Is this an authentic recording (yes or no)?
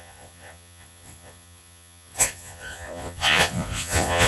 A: no